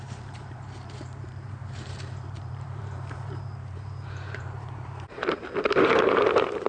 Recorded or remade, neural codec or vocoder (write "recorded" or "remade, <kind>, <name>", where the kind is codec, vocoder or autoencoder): remade, vocoder, BigVGAN v2